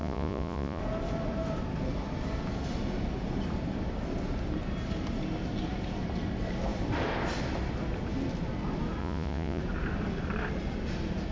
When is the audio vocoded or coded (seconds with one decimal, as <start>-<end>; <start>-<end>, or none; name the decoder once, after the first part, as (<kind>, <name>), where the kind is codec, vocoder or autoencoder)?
0.0-0.8 (vocoder, Vocos); 9.0-9.6